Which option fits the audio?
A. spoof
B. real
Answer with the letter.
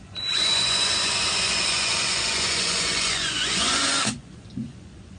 A